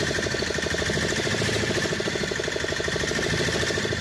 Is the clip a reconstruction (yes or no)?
no